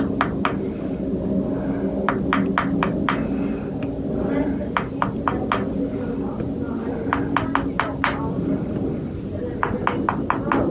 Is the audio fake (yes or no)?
no